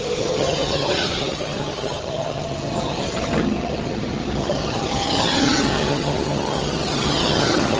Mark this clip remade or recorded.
remade